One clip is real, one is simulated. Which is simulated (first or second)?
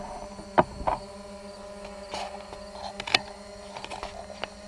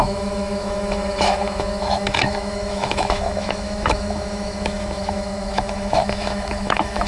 second